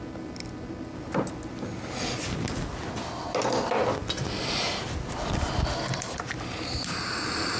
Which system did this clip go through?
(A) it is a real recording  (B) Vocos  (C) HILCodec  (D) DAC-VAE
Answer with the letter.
A